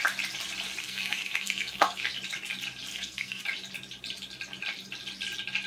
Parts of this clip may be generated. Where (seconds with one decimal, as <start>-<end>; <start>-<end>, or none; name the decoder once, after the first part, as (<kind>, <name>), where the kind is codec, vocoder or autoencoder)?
0.8-2.1 (codec, SNAC); 2.9-3.4

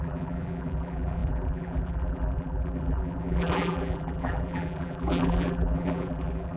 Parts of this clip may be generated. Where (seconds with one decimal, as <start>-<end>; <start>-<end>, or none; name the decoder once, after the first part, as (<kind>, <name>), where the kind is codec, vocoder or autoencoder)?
0.0-6.6 (vocoder, BigVGAN v2)

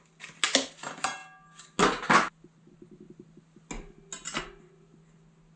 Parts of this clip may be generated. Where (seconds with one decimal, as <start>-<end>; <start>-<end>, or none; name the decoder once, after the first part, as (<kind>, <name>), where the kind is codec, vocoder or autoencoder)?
none

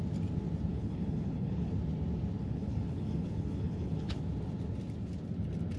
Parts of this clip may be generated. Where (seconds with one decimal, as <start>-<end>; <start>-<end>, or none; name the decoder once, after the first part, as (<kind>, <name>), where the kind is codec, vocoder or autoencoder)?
0.7-1.7 (codec, HILCodec); 2.4-4.2

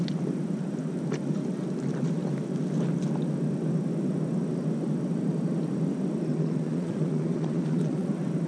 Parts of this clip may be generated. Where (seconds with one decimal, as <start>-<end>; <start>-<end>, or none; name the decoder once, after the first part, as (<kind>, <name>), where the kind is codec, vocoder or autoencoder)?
6.3-8.1 (vocoder, Vocos)

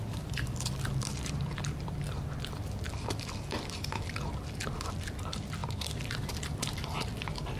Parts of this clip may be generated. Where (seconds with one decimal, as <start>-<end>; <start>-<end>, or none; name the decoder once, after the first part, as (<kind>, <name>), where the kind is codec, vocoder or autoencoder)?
0.0-5.6 (vocoder, BigVGAN v2); 6.3-7.6